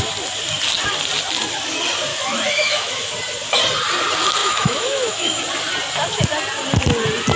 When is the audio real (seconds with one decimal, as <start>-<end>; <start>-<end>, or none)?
0.0-2.1; 3.1-4.4; 5.4-7.4